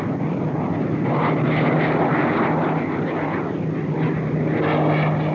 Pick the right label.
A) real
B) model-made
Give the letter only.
A